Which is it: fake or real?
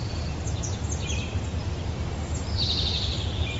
fake